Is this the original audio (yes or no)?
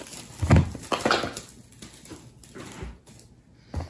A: yes